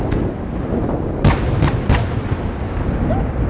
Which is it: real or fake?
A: real